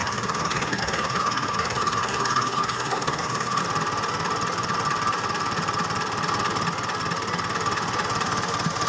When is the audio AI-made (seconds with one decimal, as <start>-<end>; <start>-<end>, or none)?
0.0-3.6